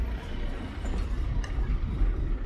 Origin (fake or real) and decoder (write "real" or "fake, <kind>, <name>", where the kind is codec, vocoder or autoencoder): real